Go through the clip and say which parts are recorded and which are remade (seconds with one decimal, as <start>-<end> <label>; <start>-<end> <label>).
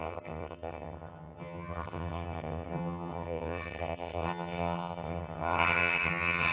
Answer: 0.0-6.5 remade